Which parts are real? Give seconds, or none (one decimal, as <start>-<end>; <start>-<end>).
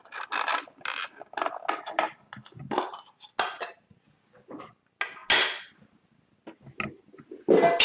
0.0-7.8